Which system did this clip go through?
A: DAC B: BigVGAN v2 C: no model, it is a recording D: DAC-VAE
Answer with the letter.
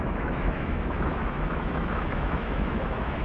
D